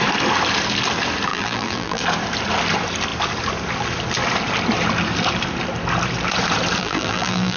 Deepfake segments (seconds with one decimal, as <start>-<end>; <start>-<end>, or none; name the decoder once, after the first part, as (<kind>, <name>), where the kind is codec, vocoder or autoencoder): 1.3-2.0 (vocoder, BigVGAN v2); 6.8-7.6